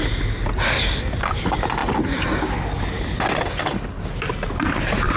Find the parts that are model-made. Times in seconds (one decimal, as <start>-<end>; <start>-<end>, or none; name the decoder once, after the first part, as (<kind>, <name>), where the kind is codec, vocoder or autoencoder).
none